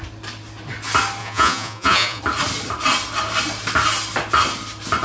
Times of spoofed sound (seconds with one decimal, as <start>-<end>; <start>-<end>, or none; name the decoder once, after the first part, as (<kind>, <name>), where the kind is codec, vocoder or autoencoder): 1.2-2.2 (vocoder, Vocos)

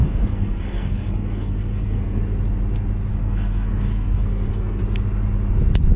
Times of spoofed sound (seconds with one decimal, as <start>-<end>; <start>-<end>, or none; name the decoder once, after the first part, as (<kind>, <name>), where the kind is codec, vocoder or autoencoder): 0.0-2.2 (codec, SNAC); 3.1-4.8

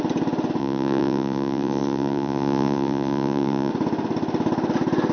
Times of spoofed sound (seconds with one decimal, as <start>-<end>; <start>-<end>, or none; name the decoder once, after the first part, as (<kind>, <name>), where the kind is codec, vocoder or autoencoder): 0.6-3.7 (vocoder, Vocos)

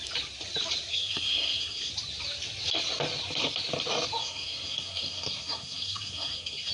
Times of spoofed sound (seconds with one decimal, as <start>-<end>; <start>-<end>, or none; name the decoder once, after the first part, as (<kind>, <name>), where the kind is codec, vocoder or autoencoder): 0.9-1.9 (codec, SNAC); 4.2-6.7

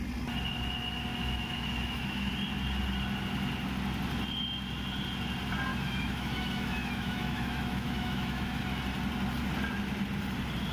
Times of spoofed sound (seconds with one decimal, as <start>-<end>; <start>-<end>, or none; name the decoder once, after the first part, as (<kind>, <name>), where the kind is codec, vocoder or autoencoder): 1.1-2.3 (autoencoder, DAC-VAE); 5.7-8.6

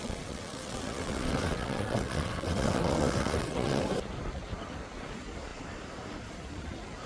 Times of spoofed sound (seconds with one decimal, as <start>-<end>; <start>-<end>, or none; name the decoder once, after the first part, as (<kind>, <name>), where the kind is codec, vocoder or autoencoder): 0.0-3.8 (vocoder, WaveNeXt)

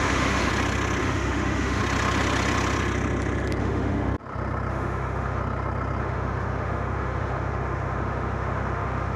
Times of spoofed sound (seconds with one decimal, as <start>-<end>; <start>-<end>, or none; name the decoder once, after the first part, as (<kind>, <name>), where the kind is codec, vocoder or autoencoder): 0.0-0.5 (autoencoder, DAC-VAE); 1.0-1.8; 3.6-4.1; 4.7-5.4; 6.0-9.2